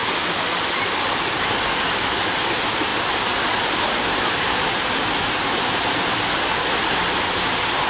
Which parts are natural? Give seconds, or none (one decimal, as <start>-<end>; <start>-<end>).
0.8-7.9